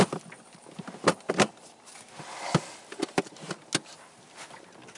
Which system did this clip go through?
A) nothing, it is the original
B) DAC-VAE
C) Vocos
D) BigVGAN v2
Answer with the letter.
A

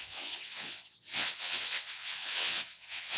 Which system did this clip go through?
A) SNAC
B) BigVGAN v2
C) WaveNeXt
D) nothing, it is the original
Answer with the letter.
C